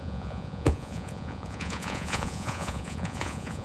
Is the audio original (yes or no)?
no